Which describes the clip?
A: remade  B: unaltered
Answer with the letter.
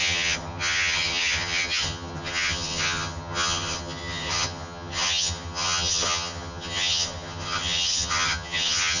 A